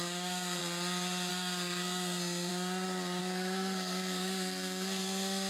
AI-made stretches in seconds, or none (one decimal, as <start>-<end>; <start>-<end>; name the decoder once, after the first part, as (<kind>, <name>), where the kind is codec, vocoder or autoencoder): 0.0-0.6 (codec, SNAC); 1.3-2.5; 3.2-5.5